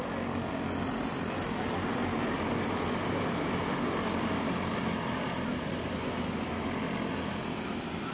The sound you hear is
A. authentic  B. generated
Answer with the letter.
A